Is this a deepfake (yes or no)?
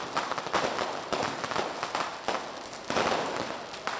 no